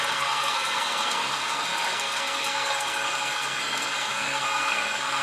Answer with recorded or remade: remade